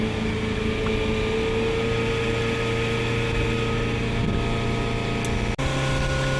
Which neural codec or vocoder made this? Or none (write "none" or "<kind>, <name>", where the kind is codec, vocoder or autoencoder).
none